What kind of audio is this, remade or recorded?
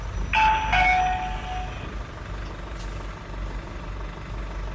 recorded